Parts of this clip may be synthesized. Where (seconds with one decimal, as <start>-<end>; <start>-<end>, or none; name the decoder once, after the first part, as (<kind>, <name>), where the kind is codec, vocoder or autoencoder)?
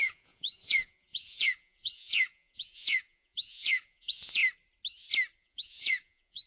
0.0-4.4 (vocoder, Vocos); 5.4-6.5